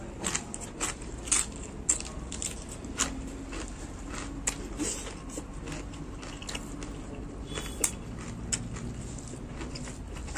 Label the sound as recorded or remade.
recorded